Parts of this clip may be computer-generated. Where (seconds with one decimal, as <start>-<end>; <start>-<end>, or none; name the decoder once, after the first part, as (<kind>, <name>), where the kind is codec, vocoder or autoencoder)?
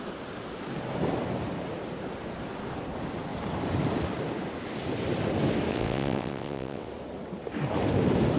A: 5.7-6.9 (vocoder, WaveNeXt)